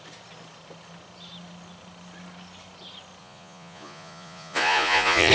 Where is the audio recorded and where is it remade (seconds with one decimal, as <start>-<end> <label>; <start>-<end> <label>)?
0.0-3.2 recorded; 3.2-5.3 remade